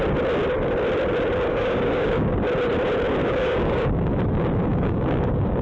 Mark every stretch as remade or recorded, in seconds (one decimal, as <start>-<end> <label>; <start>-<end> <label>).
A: 0.0-1.5 recorded; 1.5-2.3 remade; 2.3-3.2 recorded; 3.2-4.1 remade; 4.1-4.7 recorded; 4.7-5.6 remade